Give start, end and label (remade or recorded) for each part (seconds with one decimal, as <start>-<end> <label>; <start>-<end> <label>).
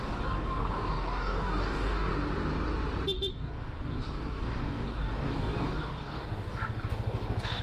0.0-2.1 remade; 2.1-3.3 recorded; 3.3-7.6 remade